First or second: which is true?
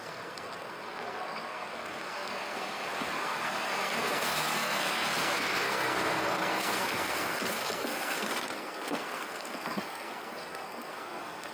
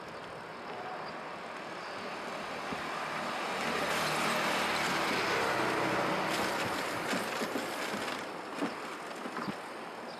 second